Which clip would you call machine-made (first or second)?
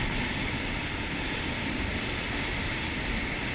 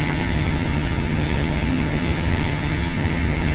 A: second